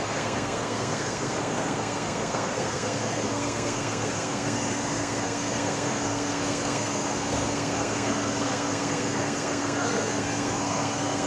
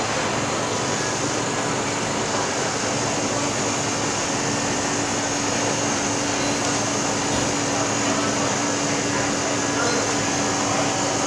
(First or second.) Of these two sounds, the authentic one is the second